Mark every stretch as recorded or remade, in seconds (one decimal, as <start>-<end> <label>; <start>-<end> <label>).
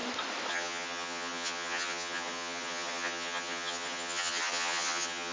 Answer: 0.0-0.5 recorded; 0.5-5.3 remade